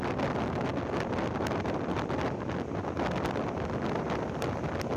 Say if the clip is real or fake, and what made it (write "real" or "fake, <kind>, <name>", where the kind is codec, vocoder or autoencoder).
real